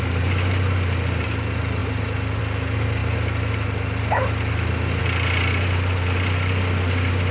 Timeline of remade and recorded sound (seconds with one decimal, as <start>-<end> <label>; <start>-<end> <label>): 0.0-7.3 recorded